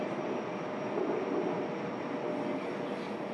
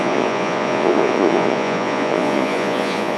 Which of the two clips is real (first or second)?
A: first